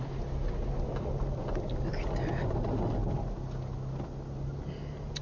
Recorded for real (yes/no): yes